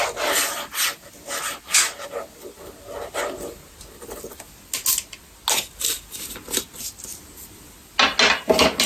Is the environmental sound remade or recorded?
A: recorded